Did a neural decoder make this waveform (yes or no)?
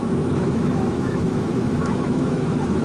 yes